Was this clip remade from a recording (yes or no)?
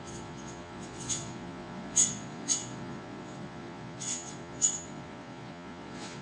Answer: yes